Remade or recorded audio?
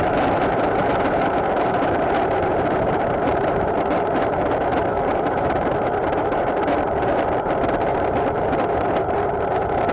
remade